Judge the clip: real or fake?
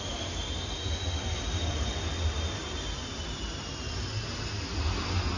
real